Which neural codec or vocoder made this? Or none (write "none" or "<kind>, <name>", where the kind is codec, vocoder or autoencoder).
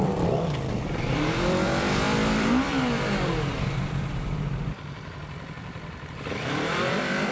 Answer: vocoder, BigVGAN v2